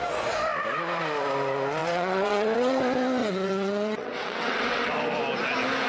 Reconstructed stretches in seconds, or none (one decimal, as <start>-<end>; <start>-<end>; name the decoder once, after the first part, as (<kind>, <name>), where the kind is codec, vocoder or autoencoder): 1.8-2.8 (vocoder, WaveNeXt); 3.2-4.9